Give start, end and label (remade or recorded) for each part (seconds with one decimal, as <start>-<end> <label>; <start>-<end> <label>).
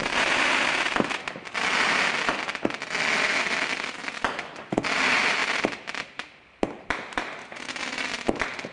0.0-8.7 recorded